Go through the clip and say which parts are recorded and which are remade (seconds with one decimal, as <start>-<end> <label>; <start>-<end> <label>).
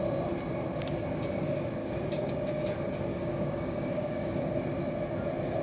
0.0-1.8 recorded; 1.8-2.3 remade; 2.3-3.1 recorded; 3.1-4.3 remade; 4.3-5.6 recorded